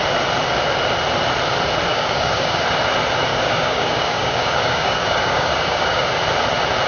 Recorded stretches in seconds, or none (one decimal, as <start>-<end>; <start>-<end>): 0.0-1.9; 2.6-3.3; 6.1-6.9

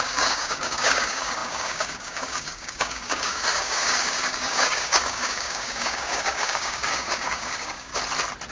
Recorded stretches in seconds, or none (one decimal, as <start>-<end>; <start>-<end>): 7.9-8.5

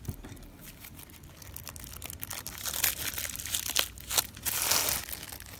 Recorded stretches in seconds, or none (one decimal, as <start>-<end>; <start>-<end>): 0.0-5.6

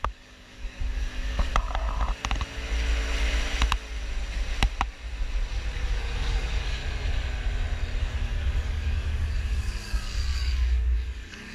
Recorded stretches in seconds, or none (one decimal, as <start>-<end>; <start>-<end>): 1.5-5.7; 6.8-8.0